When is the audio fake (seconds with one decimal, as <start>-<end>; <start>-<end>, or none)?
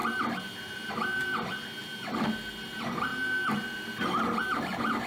none